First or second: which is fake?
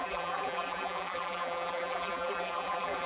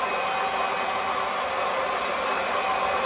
first